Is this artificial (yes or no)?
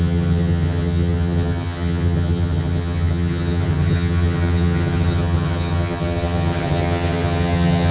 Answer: yes